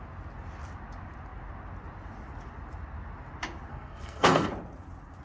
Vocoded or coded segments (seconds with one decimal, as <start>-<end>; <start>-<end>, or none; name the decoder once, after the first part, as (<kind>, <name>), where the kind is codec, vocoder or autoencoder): 3.7-4.5 (codec, SNAC)